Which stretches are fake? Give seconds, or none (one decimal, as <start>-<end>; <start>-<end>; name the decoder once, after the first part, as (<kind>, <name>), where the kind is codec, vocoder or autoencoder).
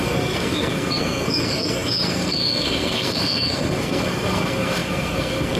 0.0-5.6 (codec, SNAC)